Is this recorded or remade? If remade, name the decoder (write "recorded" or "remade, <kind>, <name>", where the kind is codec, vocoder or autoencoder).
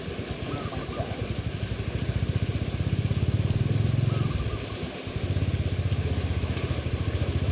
recorded